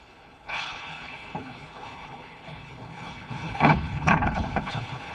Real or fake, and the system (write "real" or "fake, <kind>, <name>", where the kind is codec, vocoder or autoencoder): fake, codec, HILCodec